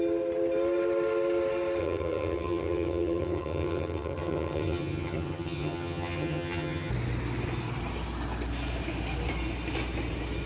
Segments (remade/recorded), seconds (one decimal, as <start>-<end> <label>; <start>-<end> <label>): 0.0-1.8 recorded; 1.8-6.9 remade; 6.9-10.5 recorded